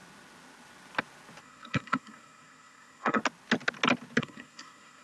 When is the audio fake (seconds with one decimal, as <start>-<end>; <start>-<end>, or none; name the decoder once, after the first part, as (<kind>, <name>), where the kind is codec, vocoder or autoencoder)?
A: 1.4-3.2 (codec, SNAC); 4.2-5.0